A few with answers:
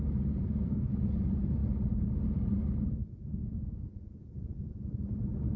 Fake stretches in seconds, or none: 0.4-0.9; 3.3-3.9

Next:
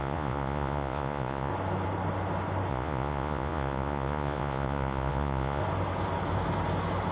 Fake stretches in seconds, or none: 0.0-1.5; 2.7-5.6

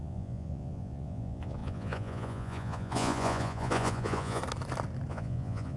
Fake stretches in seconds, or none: 0.0-4.4; 5.1-5.8

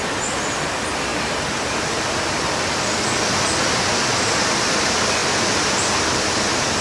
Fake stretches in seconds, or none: 5.2-5.8

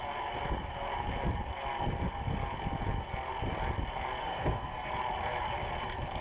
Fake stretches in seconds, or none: 4.2-4.9